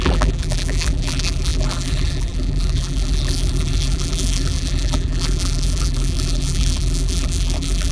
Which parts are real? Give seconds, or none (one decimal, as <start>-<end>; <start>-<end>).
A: none